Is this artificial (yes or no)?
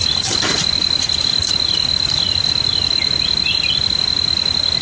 no